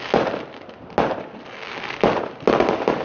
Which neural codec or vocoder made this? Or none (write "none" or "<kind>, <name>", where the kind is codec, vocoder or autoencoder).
none